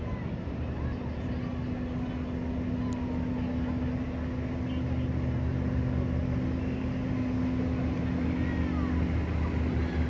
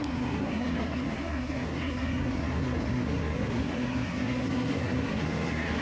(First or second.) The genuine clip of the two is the first